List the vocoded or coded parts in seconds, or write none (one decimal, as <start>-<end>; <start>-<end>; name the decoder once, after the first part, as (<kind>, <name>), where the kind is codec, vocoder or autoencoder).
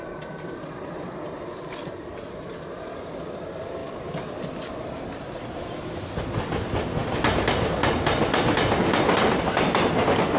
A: none